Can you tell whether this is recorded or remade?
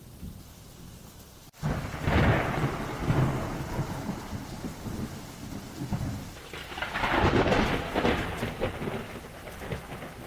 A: recorded